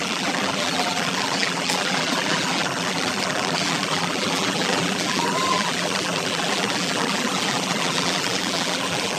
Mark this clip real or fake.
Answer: fake